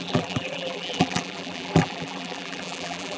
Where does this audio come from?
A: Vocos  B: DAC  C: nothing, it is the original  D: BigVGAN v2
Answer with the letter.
D